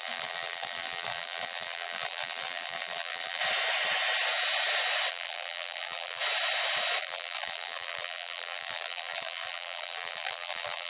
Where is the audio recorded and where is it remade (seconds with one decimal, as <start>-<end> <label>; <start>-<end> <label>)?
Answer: 0.0-3.4 remade; 3.4-5.1 recorded; 5.1-6.2 remade; 6.2-7.0 recorded; 7.0-10.9 remade